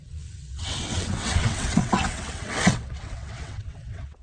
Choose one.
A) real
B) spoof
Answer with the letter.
B